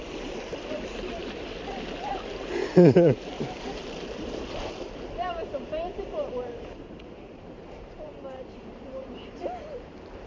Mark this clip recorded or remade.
remade